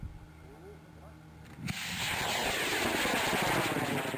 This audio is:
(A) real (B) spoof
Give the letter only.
A